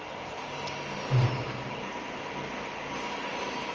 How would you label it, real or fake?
real